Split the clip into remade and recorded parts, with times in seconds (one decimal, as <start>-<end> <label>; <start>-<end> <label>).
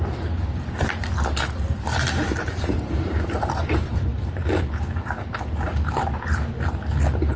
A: 0.0-1.9 recorded; 1.9-6.3 remade; 6.3-7.4 recorded